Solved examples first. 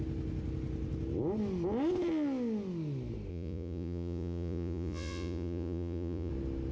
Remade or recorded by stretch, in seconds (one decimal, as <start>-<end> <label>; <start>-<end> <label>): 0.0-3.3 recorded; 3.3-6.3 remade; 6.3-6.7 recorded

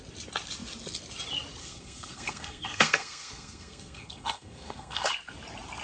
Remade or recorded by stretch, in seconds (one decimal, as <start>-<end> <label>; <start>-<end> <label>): 0.0-1.6 recorded; 1.6-5.1 remade; 5.1-5.8 recorded

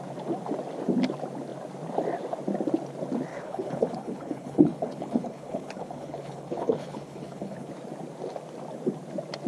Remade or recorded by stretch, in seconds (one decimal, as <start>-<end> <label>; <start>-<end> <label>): 0.0-3.3 recorded; 3.3-7.7 remade; 7.7-9.5 recorded

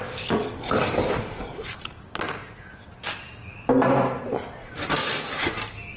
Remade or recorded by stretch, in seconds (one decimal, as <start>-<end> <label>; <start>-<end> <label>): 0.0-0.4 recorded; 0.4-2.0 remade; 2.0-4.6 recorded; 4.6-6.0 remade